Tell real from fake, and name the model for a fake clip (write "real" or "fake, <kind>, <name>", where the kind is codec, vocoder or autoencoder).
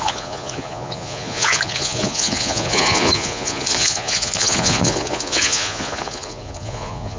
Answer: fake, vocoder, Vocos